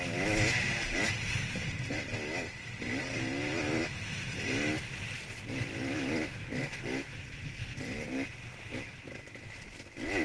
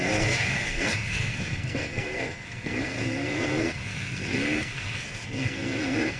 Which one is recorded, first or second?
first